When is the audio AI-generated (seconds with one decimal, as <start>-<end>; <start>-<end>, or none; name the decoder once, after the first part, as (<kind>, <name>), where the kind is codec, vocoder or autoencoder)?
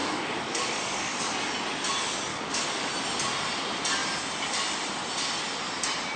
0.0-1.2 (codec, DAC); 2.3-2.9